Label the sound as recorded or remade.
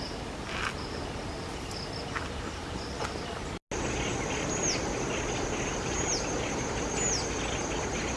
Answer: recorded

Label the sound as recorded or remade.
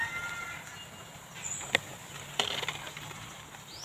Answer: recorded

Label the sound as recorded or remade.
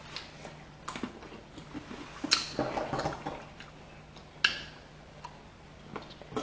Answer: recorded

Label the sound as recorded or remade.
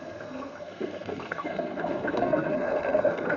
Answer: remade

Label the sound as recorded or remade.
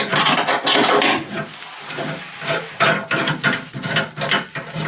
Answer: recorded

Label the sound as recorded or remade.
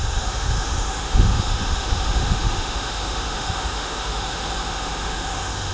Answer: remade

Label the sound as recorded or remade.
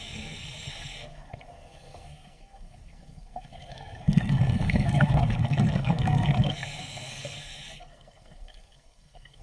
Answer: remade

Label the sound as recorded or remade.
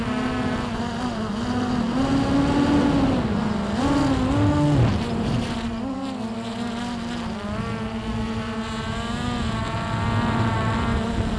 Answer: recorded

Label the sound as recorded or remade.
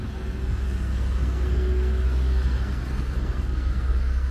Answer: remade